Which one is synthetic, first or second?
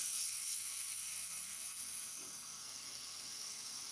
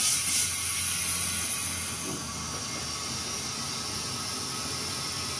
first